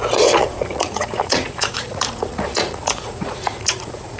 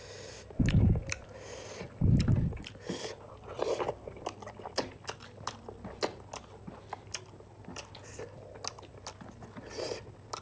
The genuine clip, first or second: second